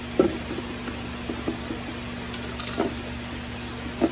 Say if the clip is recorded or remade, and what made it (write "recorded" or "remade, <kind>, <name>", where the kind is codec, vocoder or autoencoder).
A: recorded